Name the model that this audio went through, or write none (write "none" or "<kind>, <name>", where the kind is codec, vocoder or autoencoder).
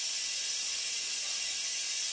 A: none